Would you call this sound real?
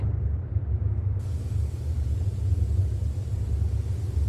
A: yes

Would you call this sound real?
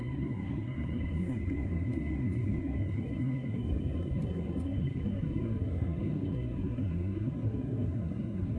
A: no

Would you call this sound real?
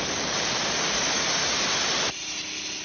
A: yes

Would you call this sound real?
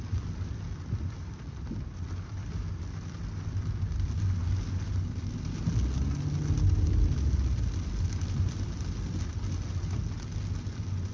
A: yes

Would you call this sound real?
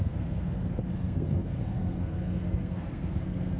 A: no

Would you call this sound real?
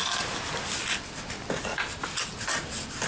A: yes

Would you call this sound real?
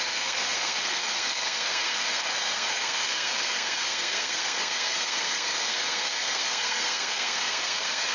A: no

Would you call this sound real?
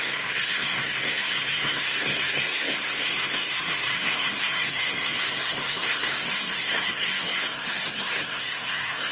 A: no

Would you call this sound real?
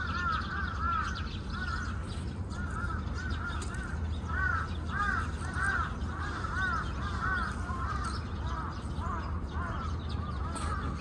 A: yes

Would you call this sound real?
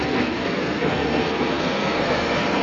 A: no